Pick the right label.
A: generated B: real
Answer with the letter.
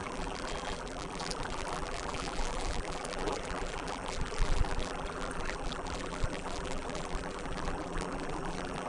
A